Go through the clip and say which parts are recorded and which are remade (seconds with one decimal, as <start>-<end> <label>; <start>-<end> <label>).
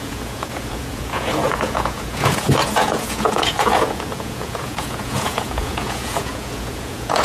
0.0-7.2 remade